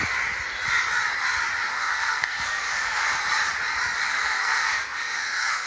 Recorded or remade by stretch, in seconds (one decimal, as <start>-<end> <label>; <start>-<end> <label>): 0.0-1.7 recorded; 1.7-3.2 remade; 3.2-4.0 recorded; 4.0-5.7 remade

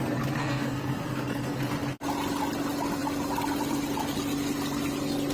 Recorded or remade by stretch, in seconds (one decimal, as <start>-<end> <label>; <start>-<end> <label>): 0.0-0.4 recorded; 0.4-1.6 remade; 1.6-5.3 recorded